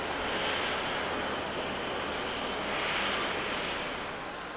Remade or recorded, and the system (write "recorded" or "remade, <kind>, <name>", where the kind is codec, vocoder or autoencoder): recorded